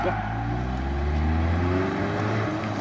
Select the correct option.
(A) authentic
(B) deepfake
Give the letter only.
A